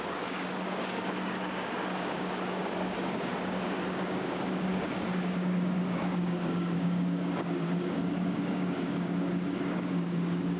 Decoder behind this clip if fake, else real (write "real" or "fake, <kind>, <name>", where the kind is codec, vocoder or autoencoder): fake, codec, DAC